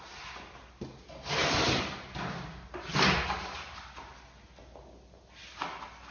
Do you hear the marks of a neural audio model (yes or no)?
no